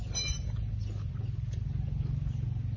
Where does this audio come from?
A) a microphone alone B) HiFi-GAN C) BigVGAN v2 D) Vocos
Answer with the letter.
A